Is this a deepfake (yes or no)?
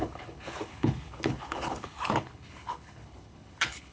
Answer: yes